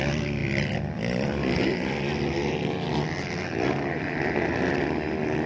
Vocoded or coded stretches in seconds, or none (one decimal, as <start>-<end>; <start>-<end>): none

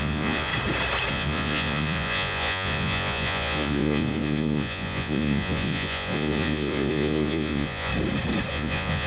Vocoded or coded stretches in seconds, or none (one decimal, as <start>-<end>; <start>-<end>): 0.0-0.5; 1.1-7.9; 8.5-9.1

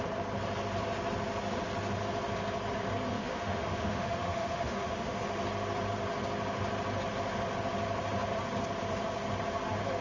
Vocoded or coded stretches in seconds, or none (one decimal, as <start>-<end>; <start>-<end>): 3.1-5.2

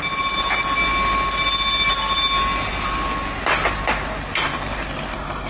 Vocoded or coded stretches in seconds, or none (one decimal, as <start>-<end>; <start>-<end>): none

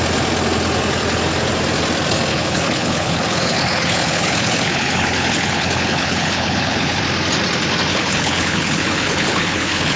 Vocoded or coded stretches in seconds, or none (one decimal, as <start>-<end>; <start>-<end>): 2.3-7.0; 7.9-10.0

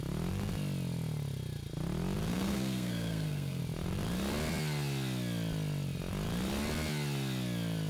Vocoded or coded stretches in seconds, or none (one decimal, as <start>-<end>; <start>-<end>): 2.3-3.6

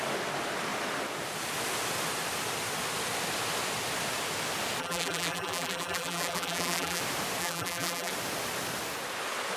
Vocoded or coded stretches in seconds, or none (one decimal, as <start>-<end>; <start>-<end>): 4.8-7.0; 7.4-8.1